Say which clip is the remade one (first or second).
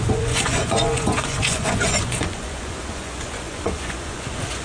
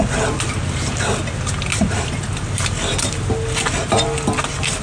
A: first